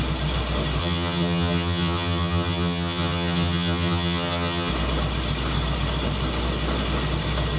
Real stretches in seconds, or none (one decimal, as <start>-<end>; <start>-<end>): 0.0-0.8; 4.7-7.6